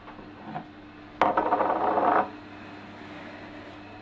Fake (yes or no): no